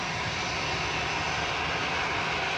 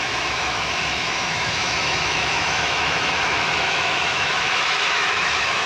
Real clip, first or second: first